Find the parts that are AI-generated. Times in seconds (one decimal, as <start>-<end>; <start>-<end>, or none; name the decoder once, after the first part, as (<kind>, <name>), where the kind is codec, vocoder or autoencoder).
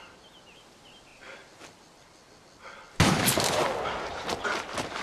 none